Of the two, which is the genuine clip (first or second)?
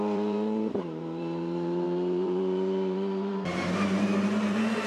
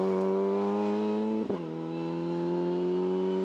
second